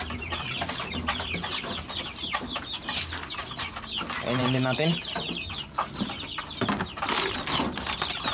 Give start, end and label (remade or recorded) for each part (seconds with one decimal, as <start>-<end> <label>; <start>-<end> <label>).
0.0-3.4 remade; 3.4-4.4 recorded; 4.4-8.3 remade